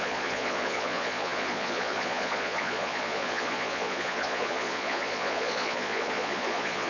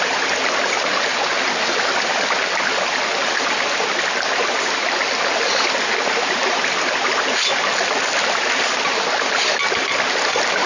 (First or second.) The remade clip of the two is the first